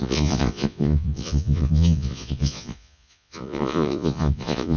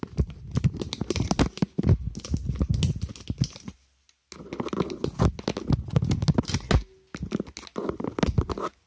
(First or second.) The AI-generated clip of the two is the first